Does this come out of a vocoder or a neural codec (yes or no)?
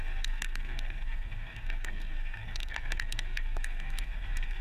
yes